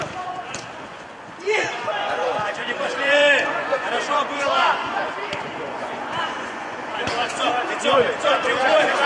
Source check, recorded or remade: remade